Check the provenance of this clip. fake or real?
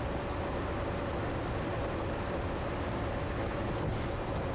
real